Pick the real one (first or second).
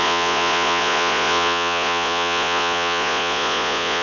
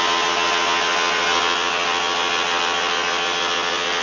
second